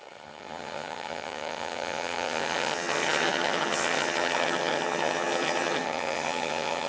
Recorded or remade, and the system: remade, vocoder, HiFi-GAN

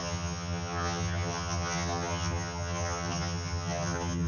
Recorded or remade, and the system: remade, vocoder, HiFi-GAN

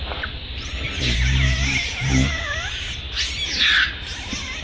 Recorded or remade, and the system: recorded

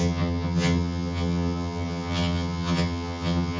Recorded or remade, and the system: remade, vocoder, HiFi-GAN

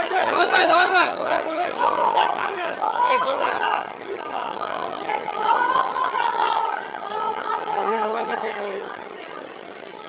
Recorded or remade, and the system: remade, vocoder, HiFi-GAN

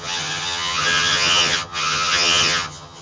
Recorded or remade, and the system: remade, vocoder, HiFi-GAN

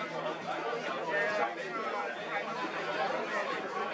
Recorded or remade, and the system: recorded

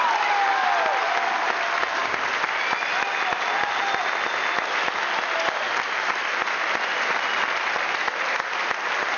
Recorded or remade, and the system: recorded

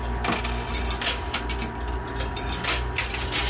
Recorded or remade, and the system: recorded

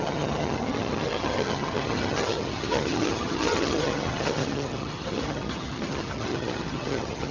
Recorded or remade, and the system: remade, vocoder, HiFi-GAN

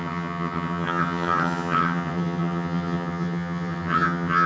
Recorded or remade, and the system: remade, vocoder, HiFi-GAN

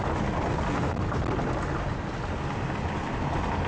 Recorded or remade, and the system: recorded